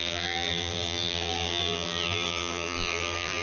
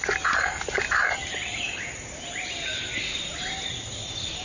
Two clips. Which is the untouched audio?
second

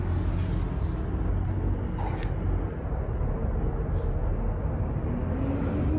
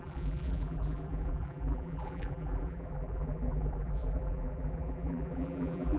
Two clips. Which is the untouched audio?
first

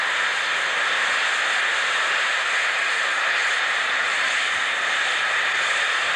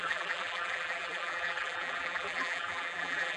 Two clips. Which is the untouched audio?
first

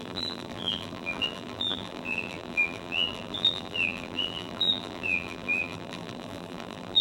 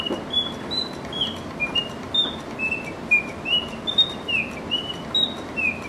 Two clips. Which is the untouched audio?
second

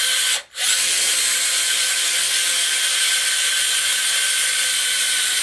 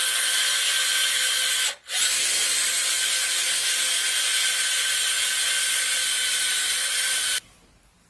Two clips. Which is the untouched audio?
second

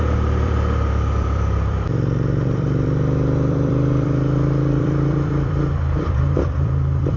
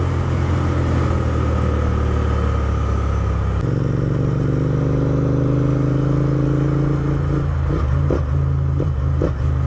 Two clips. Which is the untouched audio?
second